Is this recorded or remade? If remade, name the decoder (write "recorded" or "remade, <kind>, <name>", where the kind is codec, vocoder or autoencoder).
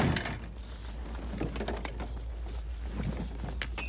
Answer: recorded